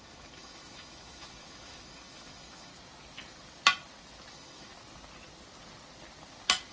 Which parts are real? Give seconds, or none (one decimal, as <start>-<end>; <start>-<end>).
2.7-4.3; 4.7-6.7